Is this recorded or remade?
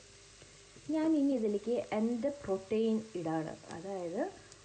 recorded